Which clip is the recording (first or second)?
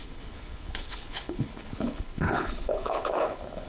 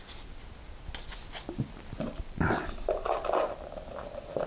second